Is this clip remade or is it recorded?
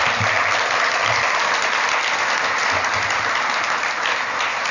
recorded